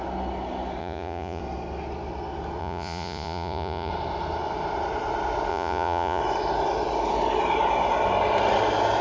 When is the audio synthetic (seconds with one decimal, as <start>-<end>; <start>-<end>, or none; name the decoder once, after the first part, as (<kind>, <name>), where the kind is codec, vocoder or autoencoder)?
0.8-1.4 (vocoder, Vocos); 2.6-3.9; 5.5-6.2